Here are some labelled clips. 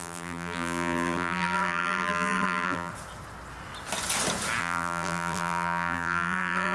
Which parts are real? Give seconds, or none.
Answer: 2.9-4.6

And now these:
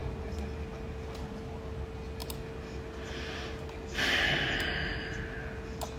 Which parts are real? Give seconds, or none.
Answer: 0.0-6.0

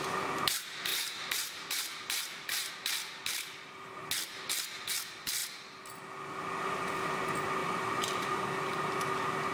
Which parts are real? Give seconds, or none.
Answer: 0.0-0.9; 2.7-7.6; 8.4-9.5

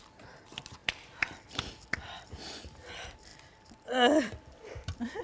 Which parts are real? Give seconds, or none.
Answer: 0.0-0.8; 1.7-3.3

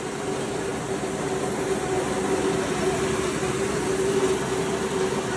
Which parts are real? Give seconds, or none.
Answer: 0.0-5.4

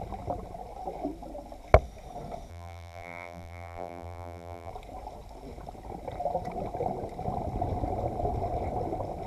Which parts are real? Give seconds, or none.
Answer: 0.0-2.5; 4.7-9.3

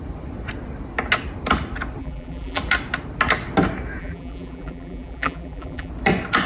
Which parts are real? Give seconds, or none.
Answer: 0.0-2.0; 2.6-4.0; 5.9-6.5

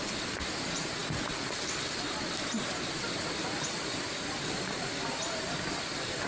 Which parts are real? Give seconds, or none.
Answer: 0.0-6.3